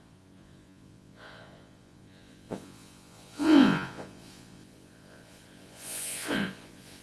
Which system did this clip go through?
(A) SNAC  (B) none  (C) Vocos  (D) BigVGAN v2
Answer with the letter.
C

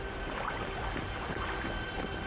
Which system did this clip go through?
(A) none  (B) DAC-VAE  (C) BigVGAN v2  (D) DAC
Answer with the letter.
A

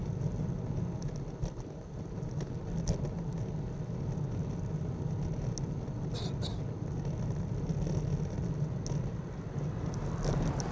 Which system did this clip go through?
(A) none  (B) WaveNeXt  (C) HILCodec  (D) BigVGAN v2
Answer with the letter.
A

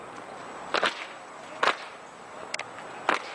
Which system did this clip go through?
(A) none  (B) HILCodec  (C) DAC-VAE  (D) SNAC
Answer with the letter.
A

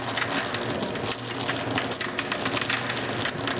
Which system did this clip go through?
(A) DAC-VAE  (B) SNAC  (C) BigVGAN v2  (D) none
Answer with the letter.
D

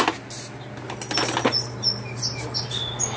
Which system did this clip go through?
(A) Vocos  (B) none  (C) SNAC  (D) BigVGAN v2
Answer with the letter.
B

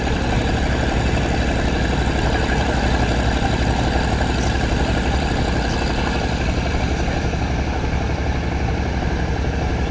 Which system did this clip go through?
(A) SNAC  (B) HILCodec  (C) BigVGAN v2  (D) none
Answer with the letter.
D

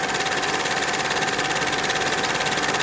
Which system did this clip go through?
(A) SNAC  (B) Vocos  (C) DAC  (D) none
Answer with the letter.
D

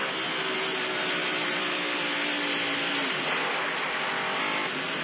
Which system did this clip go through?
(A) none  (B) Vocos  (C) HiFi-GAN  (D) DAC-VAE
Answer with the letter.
A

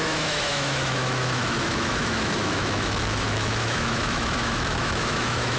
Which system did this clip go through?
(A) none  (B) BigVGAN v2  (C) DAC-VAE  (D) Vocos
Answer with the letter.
C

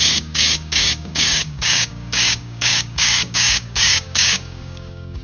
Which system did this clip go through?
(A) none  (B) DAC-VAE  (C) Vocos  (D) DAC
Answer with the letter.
D